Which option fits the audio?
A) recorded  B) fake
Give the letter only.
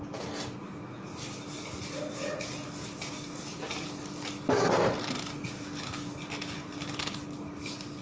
A